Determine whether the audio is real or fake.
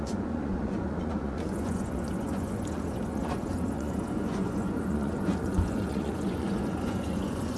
fake